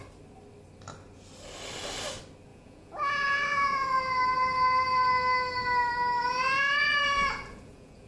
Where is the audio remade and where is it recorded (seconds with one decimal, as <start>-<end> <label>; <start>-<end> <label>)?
0.0-2.5 recorded; 2.5-4.0 remade; 4.0-6.2 recorded; 6.2-8.1 remade